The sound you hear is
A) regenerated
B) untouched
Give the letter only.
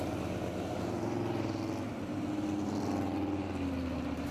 B